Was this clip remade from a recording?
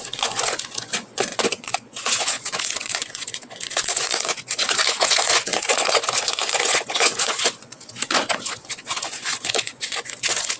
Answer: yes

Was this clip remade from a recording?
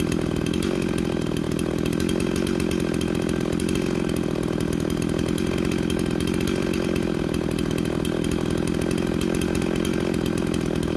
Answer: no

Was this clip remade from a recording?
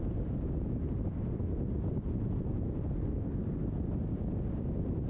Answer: no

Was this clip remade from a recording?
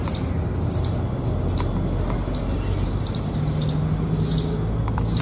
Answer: no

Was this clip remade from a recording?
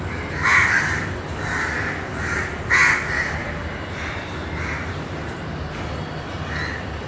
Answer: no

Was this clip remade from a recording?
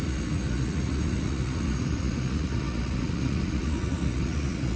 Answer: yes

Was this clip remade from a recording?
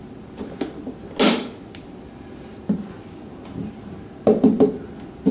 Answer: no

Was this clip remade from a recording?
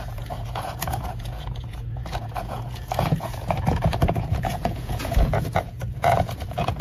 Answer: yes